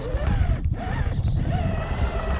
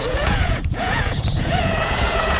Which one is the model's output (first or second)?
second